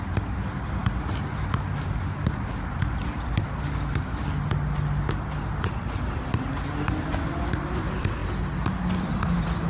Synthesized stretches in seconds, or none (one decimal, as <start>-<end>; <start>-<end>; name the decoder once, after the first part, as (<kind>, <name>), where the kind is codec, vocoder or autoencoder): none